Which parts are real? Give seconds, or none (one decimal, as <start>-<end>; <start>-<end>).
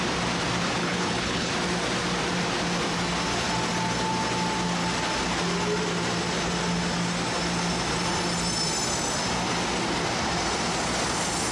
0.0-0.8; 1.5-11.5